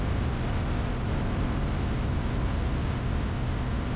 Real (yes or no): yes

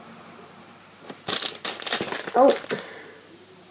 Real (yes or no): yes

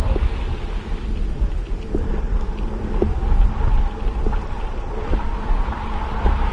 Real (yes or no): no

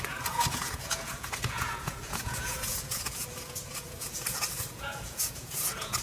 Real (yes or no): no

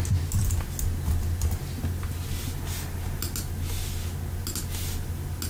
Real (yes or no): yes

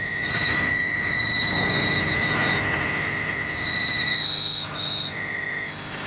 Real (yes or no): yes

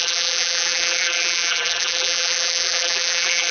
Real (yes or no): no